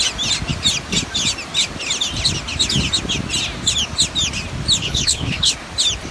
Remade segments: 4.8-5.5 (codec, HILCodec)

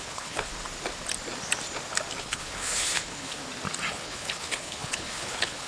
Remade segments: 0.0-0.5 (codec, HILCodec); 2.2-3.4; 3.9-5.7

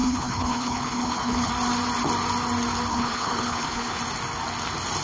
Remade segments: 0.0-1.5 (codec, HILCodec); 2.9-4.0

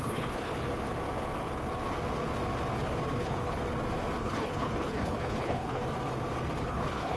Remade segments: 0.0-0.5 (codec, HILCodec); 3.2-3.6; 4.2-5.8; 6.6-7.2

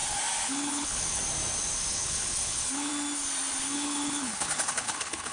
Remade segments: 0.5-1.2 (codec, HILCodec); 1.9-2.9; 3.6-5.3

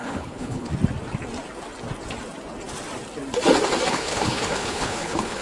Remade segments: 0.0-0.7 (codec, HILCodec); 3.9-5.4

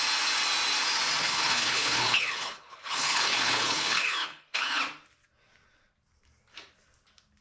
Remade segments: 1.2-4.8 (codec, HILCodec)

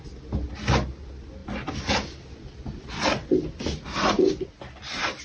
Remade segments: none